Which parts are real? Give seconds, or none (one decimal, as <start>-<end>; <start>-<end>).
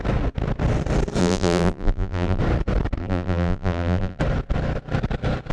0.0-1.2; 2.4-3.0; 4.2-5.5